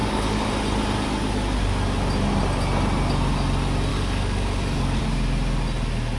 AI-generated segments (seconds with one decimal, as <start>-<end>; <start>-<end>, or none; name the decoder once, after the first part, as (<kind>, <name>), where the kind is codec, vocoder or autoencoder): 0.0-0.5 (codec, DAC); 3.9-5.0